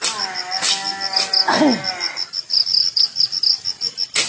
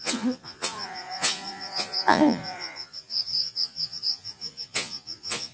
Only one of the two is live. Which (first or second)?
first